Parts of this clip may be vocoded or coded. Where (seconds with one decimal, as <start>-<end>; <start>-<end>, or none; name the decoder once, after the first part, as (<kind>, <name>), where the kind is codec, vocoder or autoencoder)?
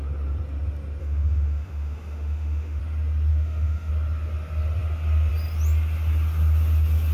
1.0-2.8 (autoencoder, DAC-VAE); 3.3-3.9